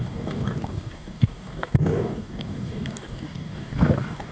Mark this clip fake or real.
fake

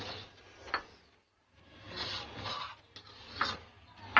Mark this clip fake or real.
real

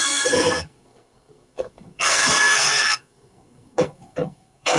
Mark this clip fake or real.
fake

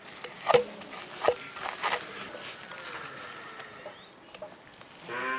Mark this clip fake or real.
real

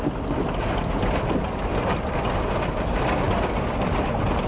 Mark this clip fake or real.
real